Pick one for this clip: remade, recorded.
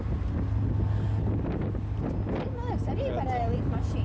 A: recorded